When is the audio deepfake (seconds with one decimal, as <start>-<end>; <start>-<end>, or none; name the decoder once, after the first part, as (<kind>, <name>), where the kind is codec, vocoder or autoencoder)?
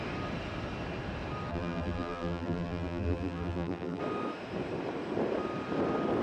1.5-4.0 (vocoder, BigVGAN v2)